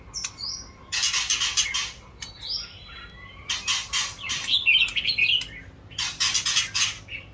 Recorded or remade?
recorded